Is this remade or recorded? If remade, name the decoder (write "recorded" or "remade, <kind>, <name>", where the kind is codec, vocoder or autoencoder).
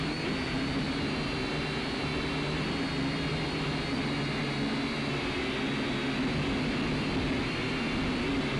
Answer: recorded